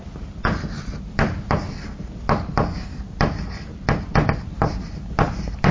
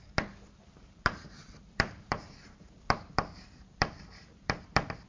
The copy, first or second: second